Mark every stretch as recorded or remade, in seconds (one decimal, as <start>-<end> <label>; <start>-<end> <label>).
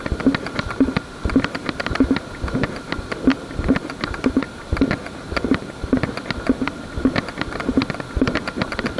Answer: 0.0-9.0 recorded